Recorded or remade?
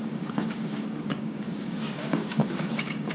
remade